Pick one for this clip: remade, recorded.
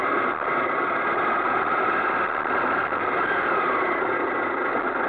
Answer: recorded